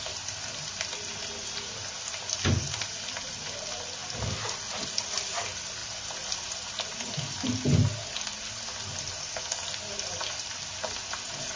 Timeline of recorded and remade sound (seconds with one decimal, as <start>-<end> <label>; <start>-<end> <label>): 0.0-11.6 recorded